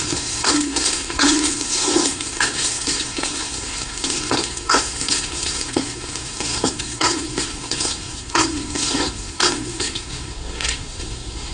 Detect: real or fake fake